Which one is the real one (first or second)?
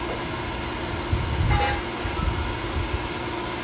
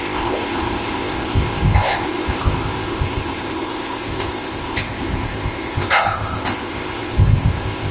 first